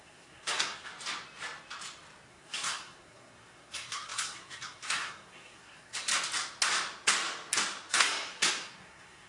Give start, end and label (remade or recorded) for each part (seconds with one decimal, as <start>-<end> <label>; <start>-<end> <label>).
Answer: 0.0-0.9 remade; 0.9-2.3 recorded; 2.3-6.1 remade; 6.1-7.9 recorded; 7.9-9.3 remade